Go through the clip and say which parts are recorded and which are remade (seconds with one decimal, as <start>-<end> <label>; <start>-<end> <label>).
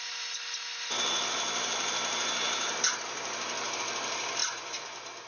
0.0-5.3 recorded